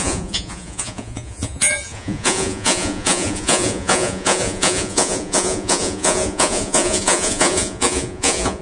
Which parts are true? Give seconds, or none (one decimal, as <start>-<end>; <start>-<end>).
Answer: none